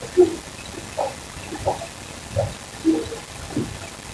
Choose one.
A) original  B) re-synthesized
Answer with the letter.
A